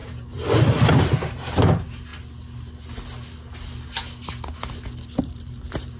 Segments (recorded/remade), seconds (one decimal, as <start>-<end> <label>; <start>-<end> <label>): 0.0-0.9 recorded; 0.9-2.1 remade; 2.1-5.2 recorded; 5.2-6.0 remade